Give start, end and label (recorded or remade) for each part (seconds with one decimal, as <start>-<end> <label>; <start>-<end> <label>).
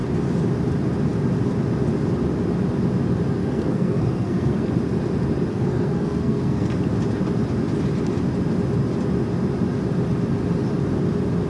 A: 0.0-3.4 recorded; 3.4-4.7 remade; 4.7-5.5 recorded; 5.5-6.8 remade; 6.8-11.5 recorded